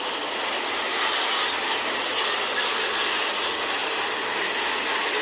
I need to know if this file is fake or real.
real